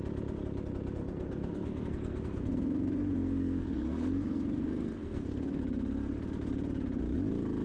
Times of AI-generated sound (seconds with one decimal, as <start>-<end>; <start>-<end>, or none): 1.0-5.6